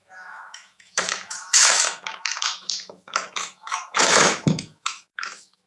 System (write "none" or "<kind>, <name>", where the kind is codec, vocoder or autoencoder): autoencoder, DAC-VAE